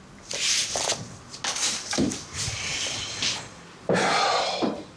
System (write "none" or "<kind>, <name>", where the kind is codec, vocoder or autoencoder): none